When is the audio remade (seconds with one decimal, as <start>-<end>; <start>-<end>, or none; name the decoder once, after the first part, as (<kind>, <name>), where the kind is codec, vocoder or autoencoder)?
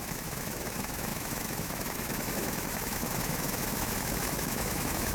0.0-5.1 (autoencoder, DAC-VAE)